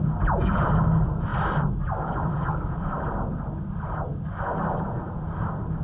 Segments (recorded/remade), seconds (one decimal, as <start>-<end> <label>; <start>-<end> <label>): 0.0-5.8 recorded